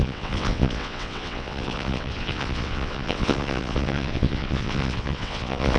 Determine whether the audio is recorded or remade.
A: remade